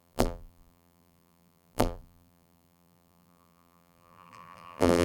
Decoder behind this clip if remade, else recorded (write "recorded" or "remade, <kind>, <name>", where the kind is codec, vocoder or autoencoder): remade, vocoder, BigVGAN v2